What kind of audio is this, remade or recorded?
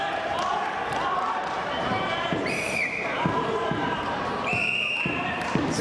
remade